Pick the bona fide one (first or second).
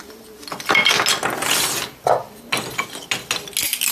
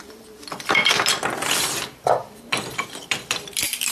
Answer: first